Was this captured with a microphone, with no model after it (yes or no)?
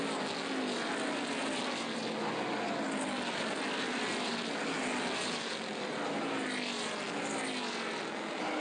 yes